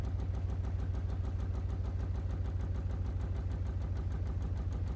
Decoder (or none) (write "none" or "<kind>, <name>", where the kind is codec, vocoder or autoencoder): none